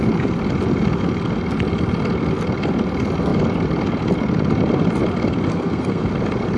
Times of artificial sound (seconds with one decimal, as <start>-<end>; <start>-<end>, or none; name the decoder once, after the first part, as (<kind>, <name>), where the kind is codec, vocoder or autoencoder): 5.5-6.1 (codec, SNAC)